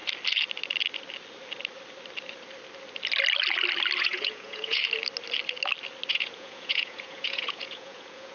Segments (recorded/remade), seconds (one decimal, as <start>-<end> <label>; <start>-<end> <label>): 0.0-4.0 recorded; 4.0-4.8 remade; 4.8-6.1 recorded; 6.1-8.3 remade